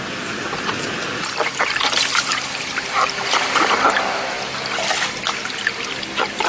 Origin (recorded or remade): recorded